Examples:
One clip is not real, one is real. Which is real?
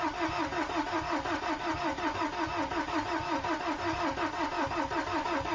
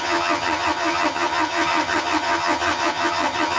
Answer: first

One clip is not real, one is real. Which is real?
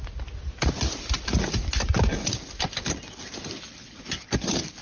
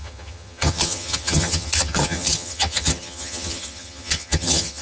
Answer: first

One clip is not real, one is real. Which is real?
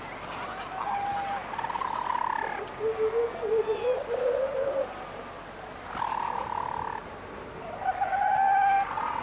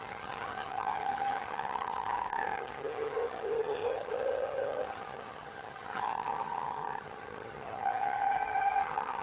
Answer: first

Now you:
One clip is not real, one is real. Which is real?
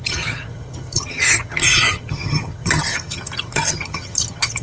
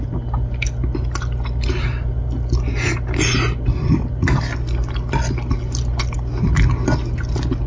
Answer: second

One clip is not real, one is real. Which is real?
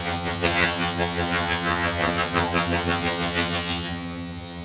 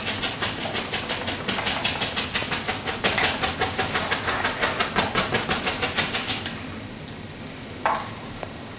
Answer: second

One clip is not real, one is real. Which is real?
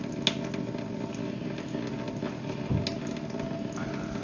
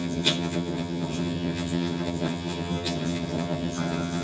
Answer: first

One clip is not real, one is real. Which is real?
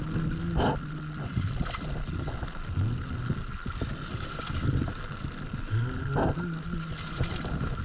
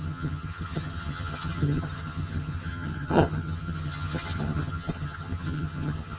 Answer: first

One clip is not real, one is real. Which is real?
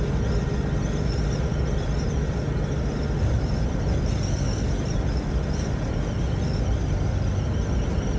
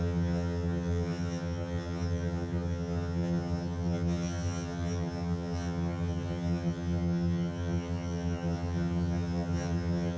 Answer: first